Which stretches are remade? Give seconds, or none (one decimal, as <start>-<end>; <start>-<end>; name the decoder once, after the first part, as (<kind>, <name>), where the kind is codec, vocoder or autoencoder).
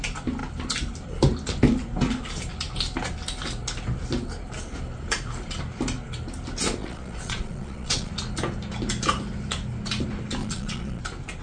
6.8-8.1 (vocoder, Vocos); 10.4-11.0